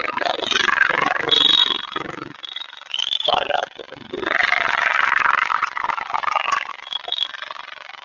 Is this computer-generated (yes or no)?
yes